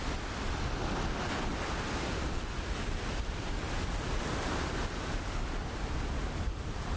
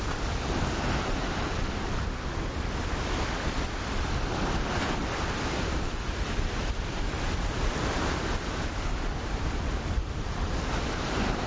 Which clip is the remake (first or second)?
second